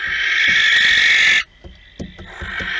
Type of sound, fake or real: real